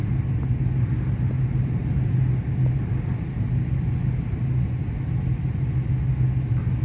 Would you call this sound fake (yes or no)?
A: no